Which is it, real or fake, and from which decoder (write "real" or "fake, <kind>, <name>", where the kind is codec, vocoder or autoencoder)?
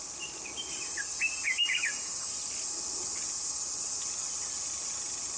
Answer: real